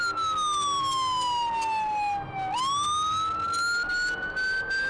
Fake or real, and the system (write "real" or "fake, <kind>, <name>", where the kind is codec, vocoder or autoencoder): real